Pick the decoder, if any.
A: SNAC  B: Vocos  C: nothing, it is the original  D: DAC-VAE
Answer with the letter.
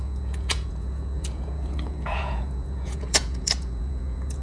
B